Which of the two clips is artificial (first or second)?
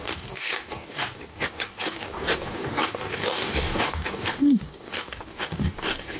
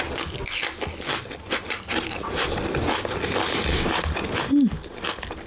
first